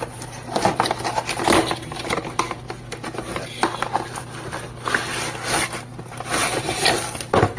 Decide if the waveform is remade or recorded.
recorded